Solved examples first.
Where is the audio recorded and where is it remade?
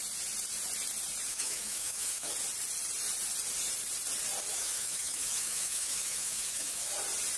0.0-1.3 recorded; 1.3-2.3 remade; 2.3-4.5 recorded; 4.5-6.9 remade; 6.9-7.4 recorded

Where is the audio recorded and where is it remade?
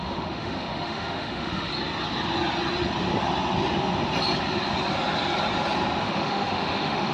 0.0-1.7 remade; 1.7-6.0 recorded; 6.0-7.1 remade